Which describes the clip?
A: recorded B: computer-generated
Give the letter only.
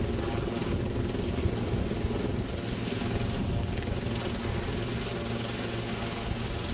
A